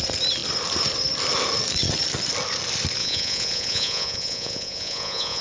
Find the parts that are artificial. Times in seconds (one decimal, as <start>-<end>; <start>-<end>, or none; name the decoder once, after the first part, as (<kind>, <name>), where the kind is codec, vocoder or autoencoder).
3.0-5.4 (vocoder, Vocos)